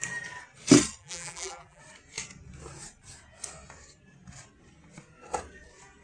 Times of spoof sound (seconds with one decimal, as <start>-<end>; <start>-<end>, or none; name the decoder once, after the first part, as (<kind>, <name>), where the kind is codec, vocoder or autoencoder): 1.0-1.8 (vocoder, BigVGAN v2)